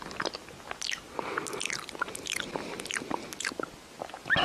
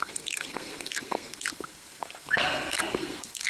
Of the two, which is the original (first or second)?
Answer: first